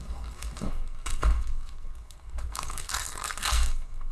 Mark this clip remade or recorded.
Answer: remade